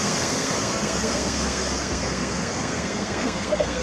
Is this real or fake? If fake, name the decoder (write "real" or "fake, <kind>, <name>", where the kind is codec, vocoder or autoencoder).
fake, codec, SNAC